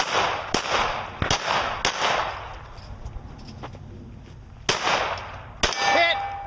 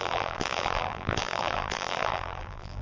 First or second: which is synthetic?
second